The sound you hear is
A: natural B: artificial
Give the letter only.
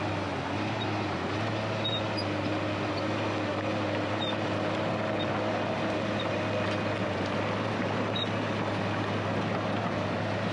A